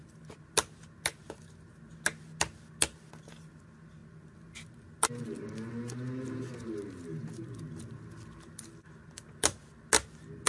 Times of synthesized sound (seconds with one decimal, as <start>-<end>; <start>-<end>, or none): none